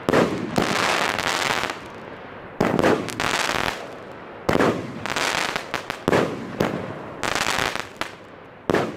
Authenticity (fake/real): real